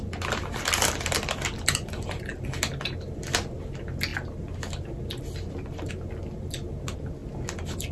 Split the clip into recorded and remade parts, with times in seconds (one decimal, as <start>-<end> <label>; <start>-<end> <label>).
0.0-7.9 recorded